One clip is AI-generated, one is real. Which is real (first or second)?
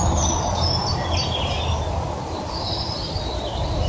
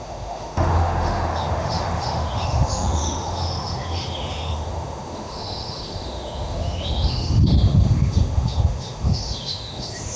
first